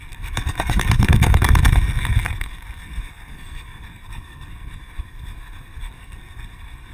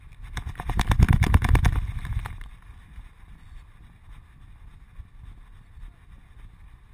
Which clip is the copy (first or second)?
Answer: first